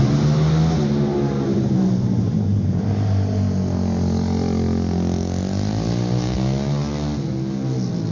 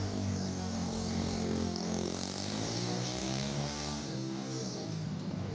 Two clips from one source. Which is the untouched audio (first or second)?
first